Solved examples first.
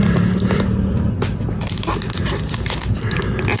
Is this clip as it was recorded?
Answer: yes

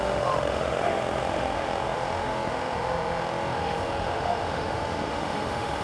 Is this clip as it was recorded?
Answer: no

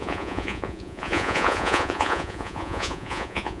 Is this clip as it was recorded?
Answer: no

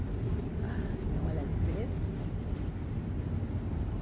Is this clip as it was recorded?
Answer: yes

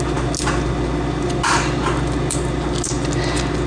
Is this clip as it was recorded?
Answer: yes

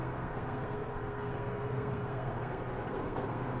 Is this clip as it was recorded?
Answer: no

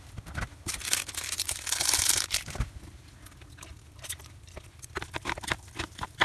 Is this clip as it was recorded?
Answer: yes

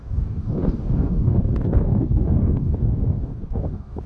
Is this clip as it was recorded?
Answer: no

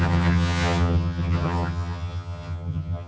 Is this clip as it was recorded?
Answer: no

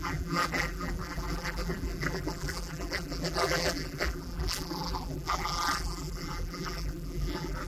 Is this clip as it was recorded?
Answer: no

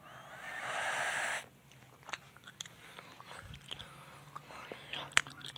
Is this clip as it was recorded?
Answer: yes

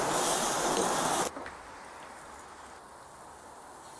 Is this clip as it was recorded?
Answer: yes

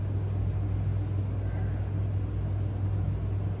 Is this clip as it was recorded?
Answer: yes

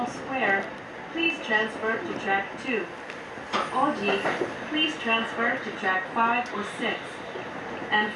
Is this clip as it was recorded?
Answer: yes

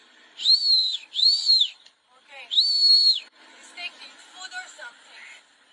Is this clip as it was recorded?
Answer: yes